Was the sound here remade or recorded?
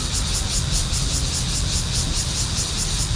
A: recorded